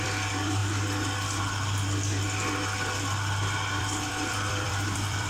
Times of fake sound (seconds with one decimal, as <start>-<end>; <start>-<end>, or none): 0.0-0.6; 3.8-5.3